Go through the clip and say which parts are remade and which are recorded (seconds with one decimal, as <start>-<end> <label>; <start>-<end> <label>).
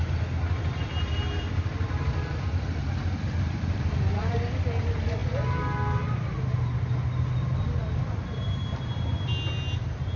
0.0-10.2 recorded